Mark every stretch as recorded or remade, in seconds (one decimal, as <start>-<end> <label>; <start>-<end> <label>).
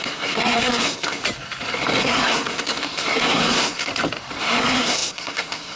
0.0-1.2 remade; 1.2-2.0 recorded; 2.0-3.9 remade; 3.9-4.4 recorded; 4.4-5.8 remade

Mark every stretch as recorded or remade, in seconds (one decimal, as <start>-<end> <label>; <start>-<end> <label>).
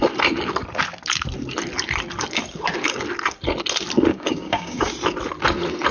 0.0-4.1 recorded; 4.1-4.9 remade; 4.9-5.9 recorded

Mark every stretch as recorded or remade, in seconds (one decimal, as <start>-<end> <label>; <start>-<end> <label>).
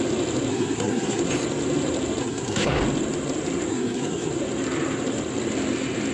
0.0-0.5 recorded; 0.5-1.2 remade; 1.2-2.2 recorded; 2.2-2.8 remade; 2.8-3.7 recorded; 3.7-4.3 remade; 4.3-6.1 recorded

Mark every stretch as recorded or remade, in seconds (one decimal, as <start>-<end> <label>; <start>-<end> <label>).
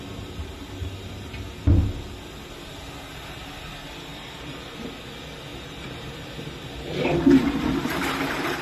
0.0-4.1 recorded; 4.1-4.8 remade; 4.8-5.5 recorded; 5.5-6.3 remade; 6.3-7.4 recorded; 7.4-8.6 remade